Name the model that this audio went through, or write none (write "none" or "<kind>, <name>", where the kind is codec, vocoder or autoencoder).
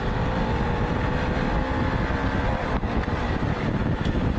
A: none